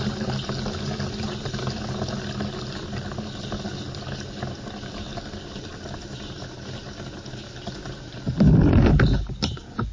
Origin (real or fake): real